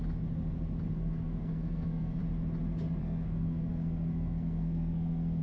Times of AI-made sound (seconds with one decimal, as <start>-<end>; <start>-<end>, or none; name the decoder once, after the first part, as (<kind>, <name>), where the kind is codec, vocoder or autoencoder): 0.9-2.2 (codec, SNAC); 3.0-5.4

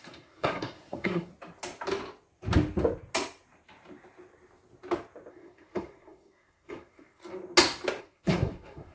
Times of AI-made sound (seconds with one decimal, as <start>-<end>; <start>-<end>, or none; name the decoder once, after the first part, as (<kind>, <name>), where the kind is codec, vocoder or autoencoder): 0.0-1.3 (codec, SNAC); 5.3-7.2; 8.0-8.9

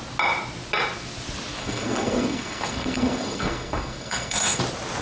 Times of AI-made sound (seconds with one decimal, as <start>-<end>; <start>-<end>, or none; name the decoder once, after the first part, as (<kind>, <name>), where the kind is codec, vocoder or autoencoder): 1.6-4.6 (codec, SNAC)

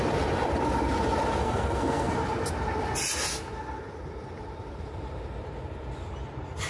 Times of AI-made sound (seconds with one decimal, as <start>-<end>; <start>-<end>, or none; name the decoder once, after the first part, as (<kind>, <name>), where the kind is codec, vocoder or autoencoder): 1.4-2.1 (codec, SNAC)

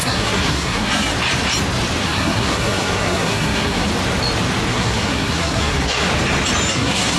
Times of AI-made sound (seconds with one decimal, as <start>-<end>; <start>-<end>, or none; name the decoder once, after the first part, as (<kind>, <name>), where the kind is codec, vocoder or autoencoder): 0.0-1.1 (codec, SNAC); 2.0-3.9; 4.7-6.1; 6.7-7.2

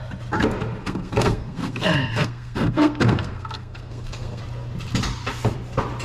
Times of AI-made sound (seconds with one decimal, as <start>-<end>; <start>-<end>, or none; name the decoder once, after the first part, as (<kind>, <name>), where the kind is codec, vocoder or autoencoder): 0.8-4.4 (codec, SNAC)